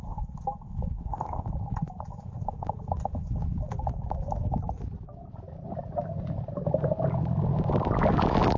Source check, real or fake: fake